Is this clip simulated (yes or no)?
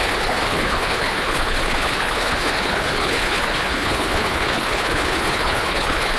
yes